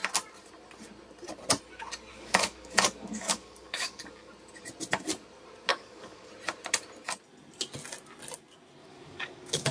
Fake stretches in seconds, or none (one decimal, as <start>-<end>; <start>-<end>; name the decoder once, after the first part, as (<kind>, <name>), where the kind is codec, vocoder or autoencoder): 2.1-4.3 (codec, DAC); 5.7-6.3; 8.8-9.7